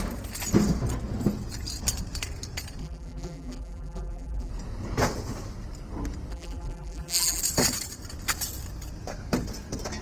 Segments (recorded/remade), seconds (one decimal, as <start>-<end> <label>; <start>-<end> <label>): 0.0-2.8 recorded; 2.8-4.5 remade; 4.5-6.3 recorded; 6.3-7.4 remade; 7.4-10.0 recorded